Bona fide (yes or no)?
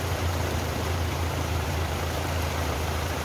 no